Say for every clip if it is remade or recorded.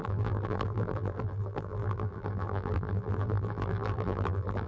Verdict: remade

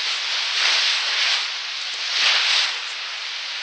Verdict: recorded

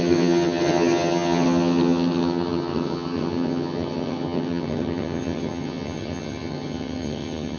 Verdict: remade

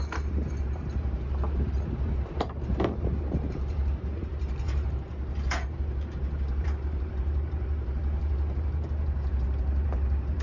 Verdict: remade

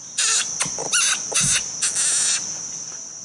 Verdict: recorded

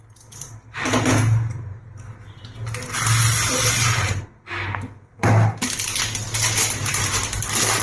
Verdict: recorded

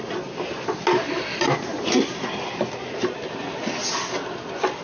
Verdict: recorded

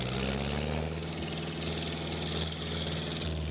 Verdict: recorded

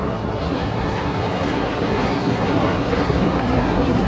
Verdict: remade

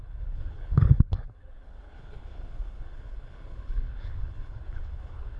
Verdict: remade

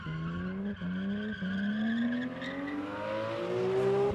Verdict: recorded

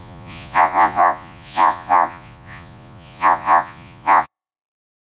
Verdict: remade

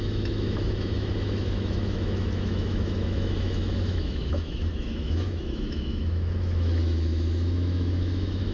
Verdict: remade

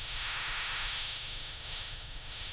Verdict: remade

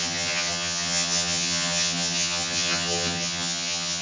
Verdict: remade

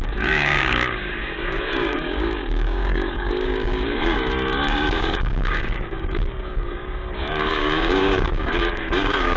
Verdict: remade